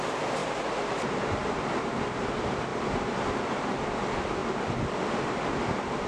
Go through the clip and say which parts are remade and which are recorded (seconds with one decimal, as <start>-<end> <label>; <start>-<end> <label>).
0.0-0.4 recorded; 0.4-2.3 remade; 2.3-6.1 recorded